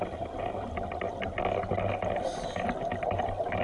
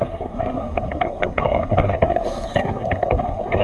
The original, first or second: first